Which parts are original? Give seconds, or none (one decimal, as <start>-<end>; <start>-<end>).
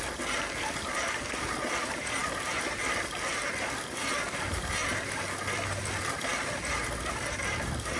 0.0-8.0